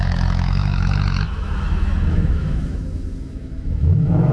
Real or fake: fake